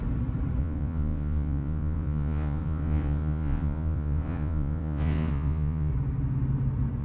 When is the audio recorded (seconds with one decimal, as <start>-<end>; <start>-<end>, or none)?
0.0-0.6; 5.9-7.0